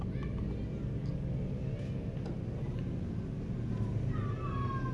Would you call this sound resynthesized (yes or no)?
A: no